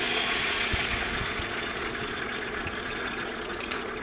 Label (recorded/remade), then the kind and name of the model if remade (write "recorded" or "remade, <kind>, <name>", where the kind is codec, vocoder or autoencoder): remade, vocoder, Vocos